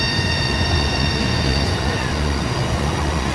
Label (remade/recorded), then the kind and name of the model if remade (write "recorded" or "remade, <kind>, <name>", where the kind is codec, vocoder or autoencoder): remade, vocoder, Vocos